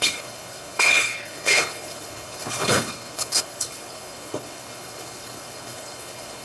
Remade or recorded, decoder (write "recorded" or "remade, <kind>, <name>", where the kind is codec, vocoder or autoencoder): remade, codec, HILCodec